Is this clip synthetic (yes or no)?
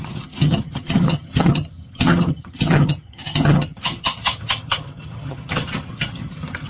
yes